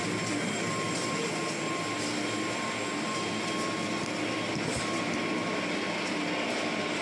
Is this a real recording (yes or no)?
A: yes